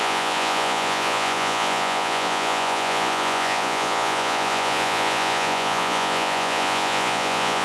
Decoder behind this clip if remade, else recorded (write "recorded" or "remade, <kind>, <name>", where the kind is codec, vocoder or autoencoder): remade, vocoder, Vocos